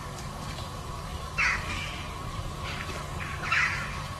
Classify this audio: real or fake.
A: fake